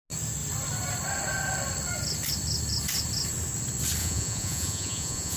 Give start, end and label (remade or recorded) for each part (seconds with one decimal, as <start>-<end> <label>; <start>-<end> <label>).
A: 0.0-4.0 recorded; 4.0-5.4 remade